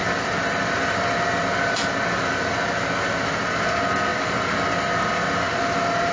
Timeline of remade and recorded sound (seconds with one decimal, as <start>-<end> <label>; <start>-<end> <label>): 0.0-6.1 recorded